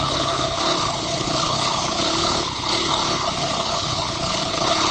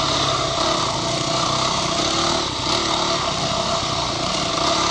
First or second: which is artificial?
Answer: first